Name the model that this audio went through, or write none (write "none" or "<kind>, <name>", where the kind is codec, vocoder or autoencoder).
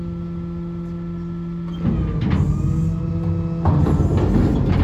none